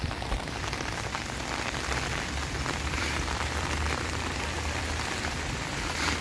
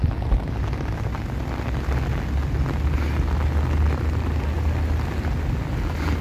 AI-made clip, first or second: first